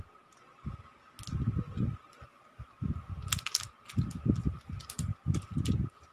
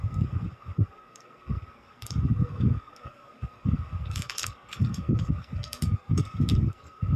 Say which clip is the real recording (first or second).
first